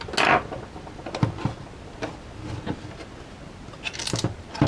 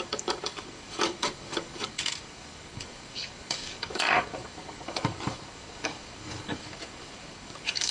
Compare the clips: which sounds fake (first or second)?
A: second